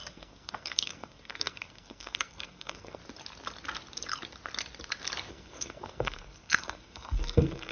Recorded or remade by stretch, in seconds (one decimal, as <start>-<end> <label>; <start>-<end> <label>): 0.0-3.0 remade; 3.0-5.3 recorded; 5.3-7.7 remade